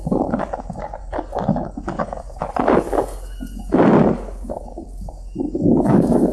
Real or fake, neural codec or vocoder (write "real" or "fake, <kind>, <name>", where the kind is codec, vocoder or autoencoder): fake, codec, DAC